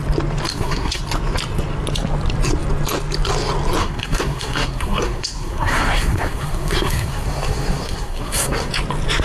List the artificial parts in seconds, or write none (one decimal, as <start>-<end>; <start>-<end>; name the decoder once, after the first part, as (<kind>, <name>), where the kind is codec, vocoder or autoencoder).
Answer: 0.5-1.0 (codec, SNAC); 3.8-8.7

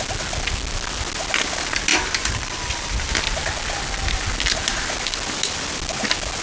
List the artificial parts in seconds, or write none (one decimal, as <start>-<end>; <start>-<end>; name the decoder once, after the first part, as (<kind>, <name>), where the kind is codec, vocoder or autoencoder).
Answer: 1.9-3.1 (vocoder, BigVGAN v2)

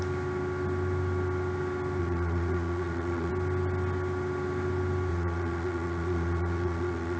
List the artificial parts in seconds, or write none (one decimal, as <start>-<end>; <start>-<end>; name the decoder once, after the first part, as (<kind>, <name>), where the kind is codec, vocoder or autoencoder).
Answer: 2.0-3.3 (vocoder, Vocos); 5.1-7.2